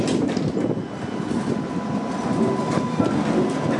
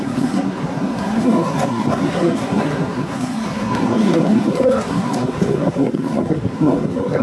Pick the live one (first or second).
first